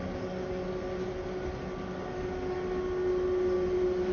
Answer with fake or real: real